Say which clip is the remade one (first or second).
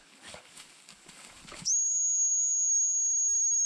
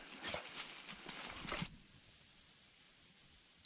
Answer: first